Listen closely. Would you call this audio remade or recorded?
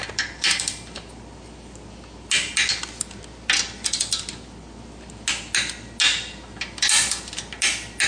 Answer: recorded